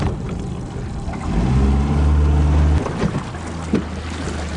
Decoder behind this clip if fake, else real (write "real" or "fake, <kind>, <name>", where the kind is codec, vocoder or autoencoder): real